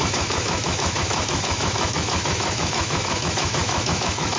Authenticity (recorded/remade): remade